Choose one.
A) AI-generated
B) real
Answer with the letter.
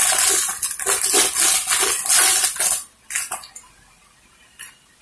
B